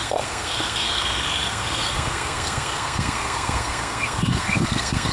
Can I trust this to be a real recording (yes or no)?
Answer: no